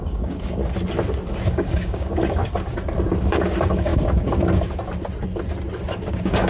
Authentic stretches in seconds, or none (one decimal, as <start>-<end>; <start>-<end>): 0.6-1.5; 2.4-3.3; 3.9-6.1